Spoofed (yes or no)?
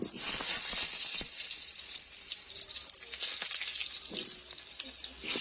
no